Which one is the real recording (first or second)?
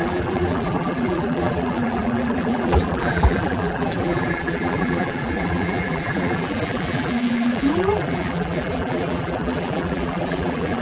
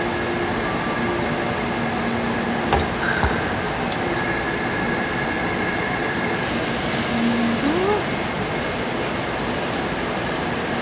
second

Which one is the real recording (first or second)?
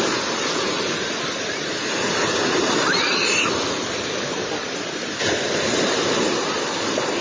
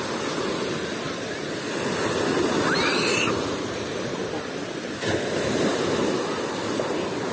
second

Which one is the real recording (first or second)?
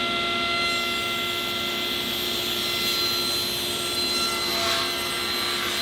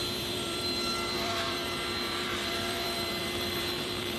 first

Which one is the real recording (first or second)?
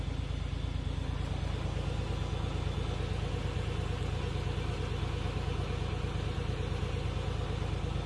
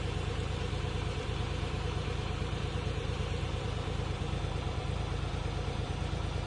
first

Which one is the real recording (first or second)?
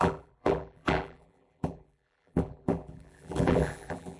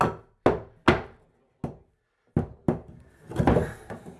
second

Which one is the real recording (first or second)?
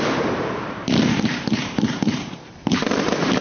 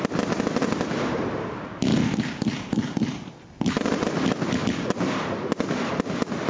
second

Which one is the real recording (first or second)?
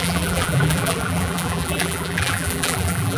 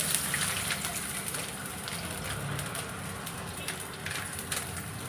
second